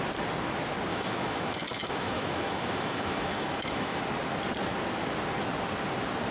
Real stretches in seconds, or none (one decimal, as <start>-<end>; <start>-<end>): 0.0-0.9; 4.0-6.3